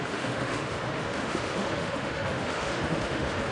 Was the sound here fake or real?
fake